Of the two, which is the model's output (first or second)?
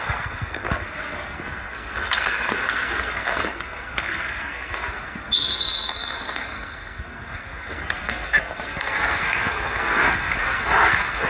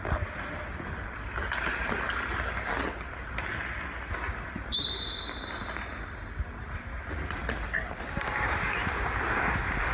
first